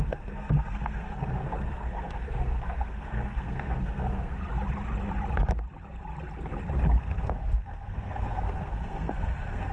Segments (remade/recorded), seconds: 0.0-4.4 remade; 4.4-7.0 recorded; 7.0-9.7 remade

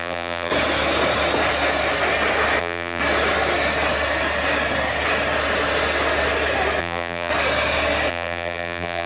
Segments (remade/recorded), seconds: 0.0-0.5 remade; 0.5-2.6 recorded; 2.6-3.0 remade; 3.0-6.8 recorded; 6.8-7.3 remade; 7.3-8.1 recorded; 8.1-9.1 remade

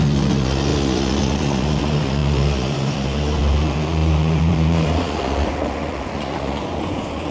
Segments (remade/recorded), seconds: 0.0-7.3 remade

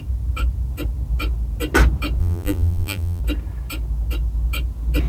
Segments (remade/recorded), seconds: 0.0-2.2 recorded; 2.2-3.2 remade; 3.2-5.1 recorded

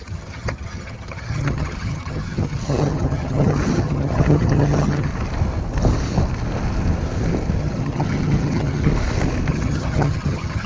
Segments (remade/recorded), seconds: 0.0-5.1 remade; 5.1-7.6 recorded; 7.6-8.9 remade; 8.9-9.5 recorded; 9.5-10.7 remade

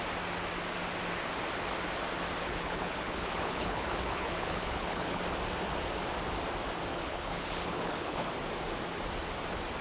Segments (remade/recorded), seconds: 0.0-2.4 recorded; 2.4-5.2 remade; 5.2-6.9 recorded; 6.9-8.3 remade; 8.3-9.8 recorded